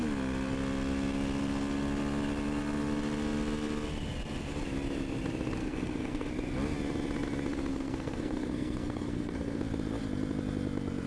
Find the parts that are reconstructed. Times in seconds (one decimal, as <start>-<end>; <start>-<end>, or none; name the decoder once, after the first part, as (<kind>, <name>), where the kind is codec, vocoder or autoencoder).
5.6-6.3 (codec, SNAC); 7.7-9.6